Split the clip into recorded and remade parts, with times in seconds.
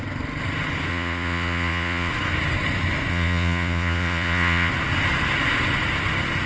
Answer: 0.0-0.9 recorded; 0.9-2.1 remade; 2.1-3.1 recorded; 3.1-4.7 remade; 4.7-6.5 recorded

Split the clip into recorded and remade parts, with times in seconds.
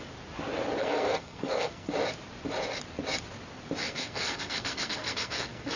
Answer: 0.0-0.8 recorded; 0.8-1.9 remade; 1.9-3.8 recorded; 3.8-5.8 remade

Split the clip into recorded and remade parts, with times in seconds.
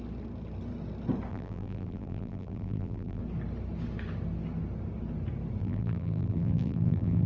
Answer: 0.0-1.3 recorded; 1.3-3.2 remade; 3.2-5.6 recorded; 5.6-7.3 remade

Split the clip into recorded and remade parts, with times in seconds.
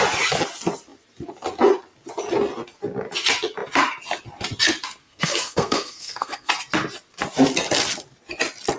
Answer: 0.0-5.0 recorded; 5.0-6.5 remade; 6.5-8.8 recorded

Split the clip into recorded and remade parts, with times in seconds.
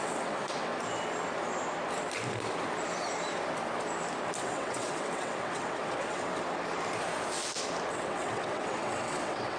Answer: 0.0-0.7 remade; 0.7-4.4 recorded; 4.4-6.3 remade; 6.3-7.9 recorded; 7.9-9.6 remade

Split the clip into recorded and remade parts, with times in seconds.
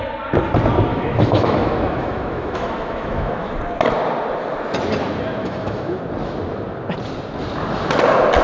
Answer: 0.0-0.9 recorded; 0.9-3.5 remade; 3.5-5.4 recorded; 5.4-6.0 remade; 6.0-8.4 recorded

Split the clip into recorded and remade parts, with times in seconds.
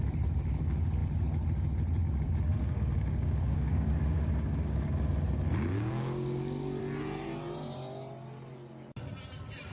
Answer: 0.0-2.5 recorded; 2.5-5.1 remade; 5.1-5.7 recorded; 5.7-6.8 remade; 6.8-9.7 recorded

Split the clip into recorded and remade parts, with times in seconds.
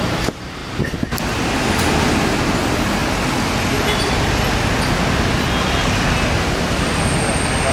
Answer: 0.0-0.6 remade; 0.6-2.6 recorded; 2.6-3.0 remade; 3.0-7.7 recorded